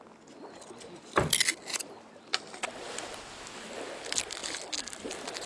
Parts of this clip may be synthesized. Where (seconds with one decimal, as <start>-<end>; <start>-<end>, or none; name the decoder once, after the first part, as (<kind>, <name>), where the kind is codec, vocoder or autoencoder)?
none